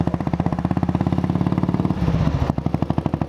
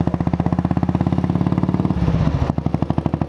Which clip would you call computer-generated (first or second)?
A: first